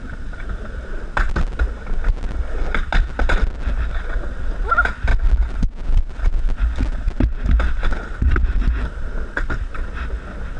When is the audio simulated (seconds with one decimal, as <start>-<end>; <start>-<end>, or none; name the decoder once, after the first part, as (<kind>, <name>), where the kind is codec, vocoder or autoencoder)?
none